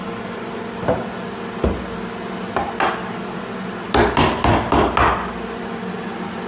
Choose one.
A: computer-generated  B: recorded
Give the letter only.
B